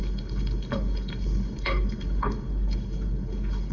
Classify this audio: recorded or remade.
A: remade